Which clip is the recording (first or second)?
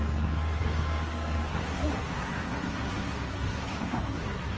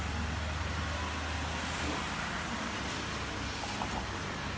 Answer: second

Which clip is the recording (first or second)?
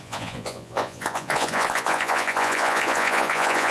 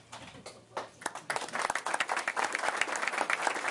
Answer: second